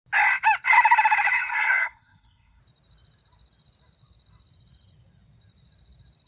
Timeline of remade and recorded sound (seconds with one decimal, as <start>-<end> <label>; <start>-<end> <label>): 0.0-1.5 recorded; 1.5-2.6 remade; 2.6-6.3 recorded